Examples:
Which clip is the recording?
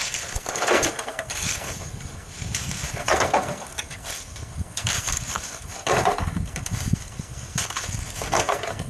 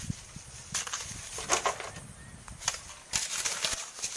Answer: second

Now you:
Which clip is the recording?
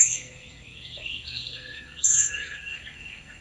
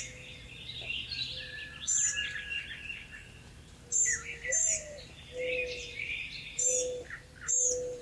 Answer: second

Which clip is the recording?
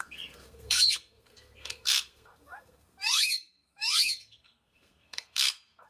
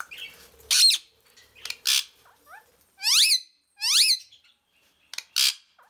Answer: second